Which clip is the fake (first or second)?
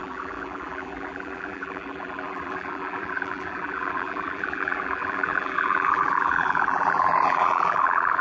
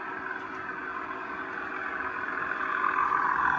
first